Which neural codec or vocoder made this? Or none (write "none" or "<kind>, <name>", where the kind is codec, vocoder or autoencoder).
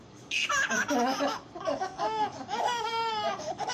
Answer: codec, DAC